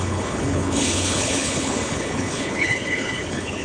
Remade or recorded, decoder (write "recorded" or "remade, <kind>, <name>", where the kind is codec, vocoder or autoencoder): remade, codec, HILCodec